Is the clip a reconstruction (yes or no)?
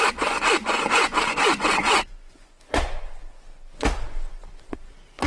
yes